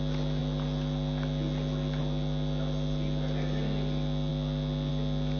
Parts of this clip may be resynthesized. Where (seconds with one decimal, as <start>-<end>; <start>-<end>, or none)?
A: none